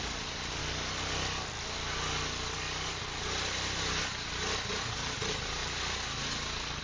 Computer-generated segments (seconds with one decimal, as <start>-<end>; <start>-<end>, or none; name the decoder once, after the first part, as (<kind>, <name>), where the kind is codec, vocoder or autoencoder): 0.0-0.6 (vocoder, BigVGAN v2); 4.7-5.6